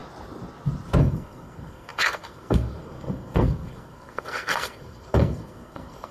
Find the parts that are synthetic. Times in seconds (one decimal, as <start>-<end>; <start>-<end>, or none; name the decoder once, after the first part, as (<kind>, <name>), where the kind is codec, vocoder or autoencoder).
1.0-6.1 (codec, SNAC)